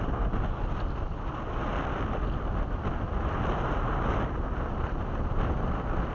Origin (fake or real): real